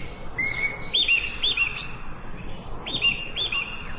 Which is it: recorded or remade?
recorded